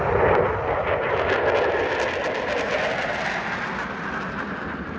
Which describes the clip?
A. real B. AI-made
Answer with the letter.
A